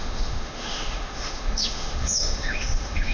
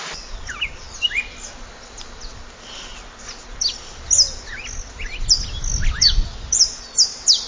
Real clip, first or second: second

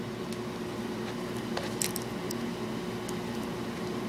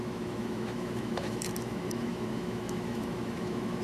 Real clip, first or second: first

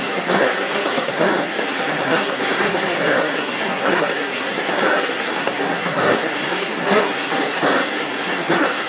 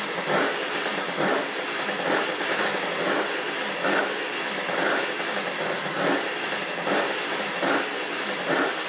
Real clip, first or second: second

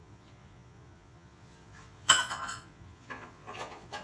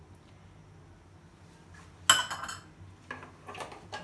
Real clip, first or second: second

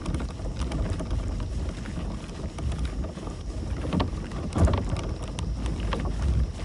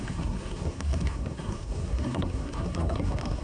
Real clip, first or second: first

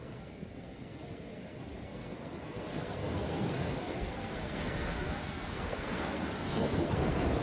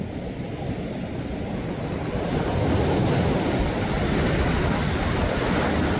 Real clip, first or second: second